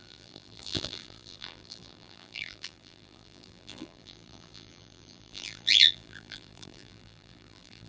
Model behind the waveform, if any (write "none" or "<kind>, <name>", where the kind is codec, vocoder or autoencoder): vocoder, BigVGAN v2